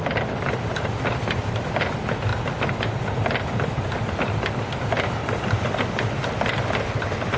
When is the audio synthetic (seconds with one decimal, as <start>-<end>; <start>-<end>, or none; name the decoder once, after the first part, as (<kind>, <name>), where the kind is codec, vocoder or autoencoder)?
none